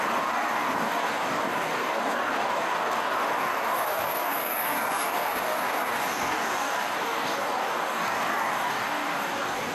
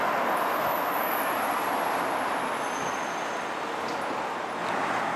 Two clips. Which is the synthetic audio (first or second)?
first